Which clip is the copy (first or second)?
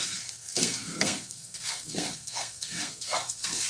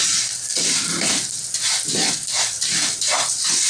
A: first